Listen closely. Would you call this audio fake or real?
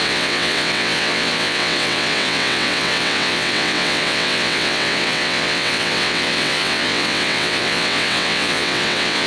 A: fake